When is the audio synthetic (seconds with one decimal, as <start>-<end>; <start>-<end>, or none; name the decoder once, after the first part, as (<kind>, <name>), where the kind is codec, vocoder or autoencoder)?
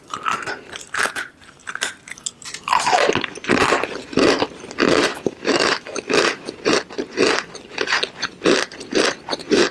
5.1-6.5 (autoencoder, DAC-VAE)